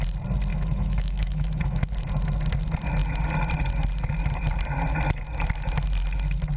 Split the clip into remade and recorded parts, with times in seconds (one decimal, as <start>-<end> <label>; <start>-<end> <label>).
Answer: 0.0-0.5 recorded; 0.5-1.9 remade; 1.9-6.6 recorded